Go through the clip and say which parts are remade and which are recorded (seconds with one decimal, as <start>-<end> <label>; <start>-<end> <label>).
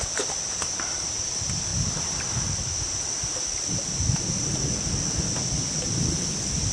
0.0-6.7 recorded